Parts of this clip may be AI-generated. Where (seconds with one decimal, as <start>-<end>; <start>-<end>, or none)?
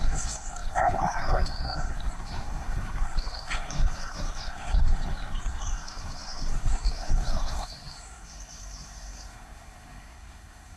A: 0.0-10.8